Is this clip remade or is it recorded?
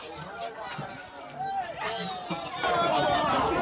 recorded